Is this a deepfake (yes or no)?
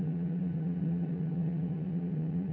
yes